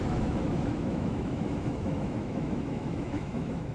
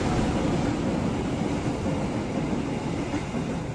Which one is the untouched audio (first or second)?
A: second